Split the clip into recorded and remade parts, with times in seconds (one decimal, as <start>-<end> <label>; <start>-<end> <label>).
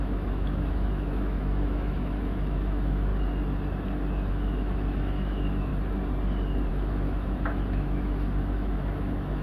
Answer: 0.0-3.1 remade; 3.1-4.3 recorded; 4.3-5.7 remade; 5.7-6.7 recorded; 6.7-9.4 remade